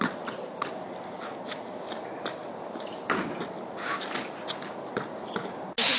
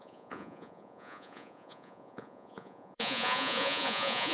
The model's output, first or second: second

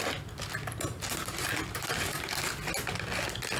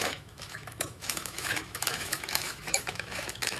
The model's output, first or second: second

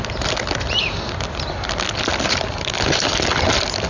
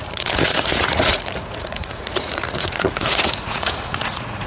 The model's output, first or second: second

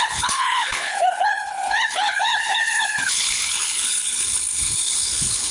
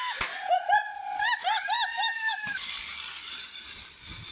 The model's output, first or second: first